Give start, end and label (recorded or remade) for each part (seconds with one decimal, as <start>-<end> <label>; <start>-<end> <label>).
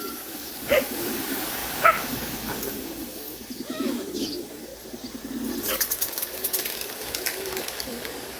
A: 0.0-4.7 remade; 4.7-5.6 recorded; 5.6-8.4 remade